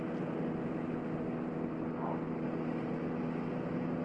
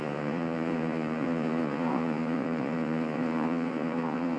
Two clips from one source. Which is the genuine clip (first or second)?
first